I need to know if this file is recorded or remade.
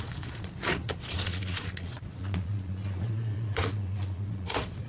remade